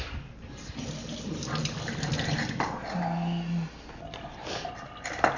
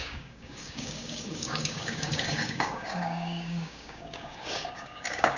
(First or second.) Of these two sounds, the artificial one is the second